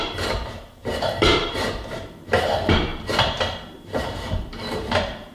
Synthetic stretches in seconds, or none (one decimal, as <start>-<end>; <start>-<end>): 0.0-2.9; 4.0-5.3